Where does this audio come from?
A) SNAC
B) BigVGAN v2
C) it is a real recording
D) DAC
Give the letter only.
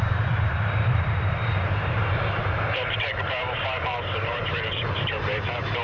B